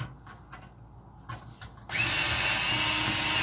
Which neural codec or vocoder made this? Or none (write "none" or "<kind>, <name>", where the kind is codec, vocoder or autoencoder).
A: none